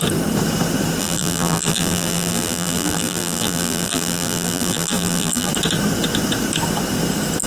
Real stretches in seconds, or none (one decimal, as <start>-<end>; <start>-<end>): 0.0-1.0; 5.5-7.5